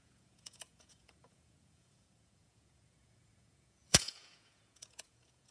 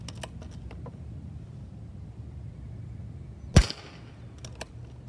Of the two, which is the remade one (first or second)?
first